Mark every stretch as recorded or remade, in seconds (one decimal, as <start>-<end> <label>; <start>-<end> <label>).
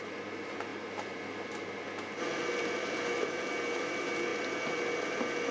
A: 0.0-5.5 recorded